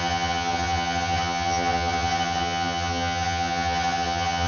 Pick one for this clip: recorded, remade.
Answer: remade